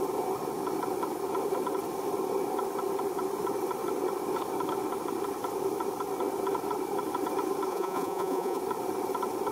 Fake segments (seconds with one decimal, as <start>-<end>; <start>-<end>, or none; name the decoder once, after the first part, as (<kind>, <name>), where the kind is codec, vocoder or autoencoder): 7.7-8.6 (vocoder, Vocos)